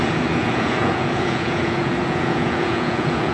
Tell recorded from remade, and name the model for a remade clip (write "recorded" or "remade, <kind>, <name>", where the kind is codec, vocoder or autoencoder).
remade, vocoder, Vocos